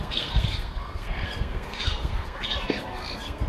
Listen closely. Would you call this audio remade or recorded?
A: remade